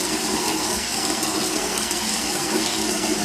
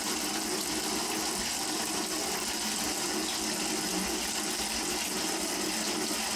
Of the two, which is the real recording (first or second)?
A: second